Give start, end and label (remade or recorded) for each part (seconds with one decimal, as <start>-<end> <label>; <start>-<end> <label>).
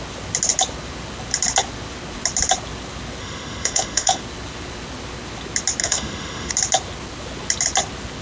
0.0-3.2 recorded; 3.2-4.2 remade; 4.2-5.8 recorded; 5.8-6.5 remade; 6.5-8.2 recorded